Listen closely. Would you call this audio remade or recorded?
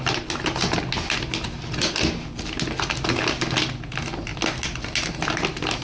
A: recorded